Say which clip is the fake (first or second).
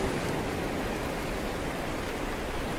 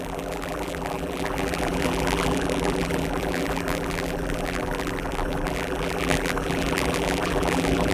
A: second